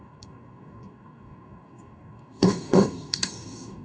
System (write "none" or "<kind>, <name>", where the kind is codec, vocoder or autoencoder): codec, DAC